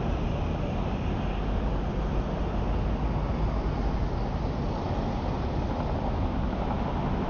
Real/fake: real